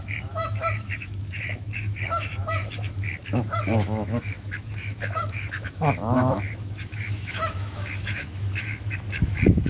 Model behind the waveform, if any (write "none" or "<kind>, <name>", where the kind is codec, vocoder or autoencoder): autoencoder, DAC-VAE